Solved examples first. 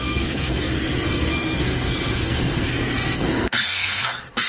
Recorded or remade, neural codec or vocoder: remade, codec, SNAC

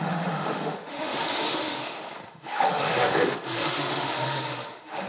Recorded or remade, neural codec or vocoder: remade, autoencoder, DAC-VAE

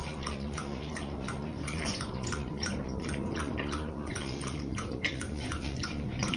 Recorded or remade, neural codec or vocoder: remade, vocoder, Vocos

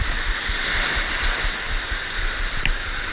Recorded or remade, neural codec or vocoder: remade, vocoder, BigVGAN v2